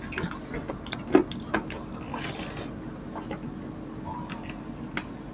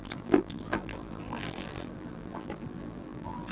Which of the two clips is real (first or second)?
first